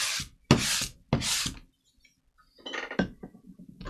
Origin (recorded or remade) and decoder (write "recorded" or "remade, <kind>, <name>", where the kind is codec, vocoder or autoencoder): recorded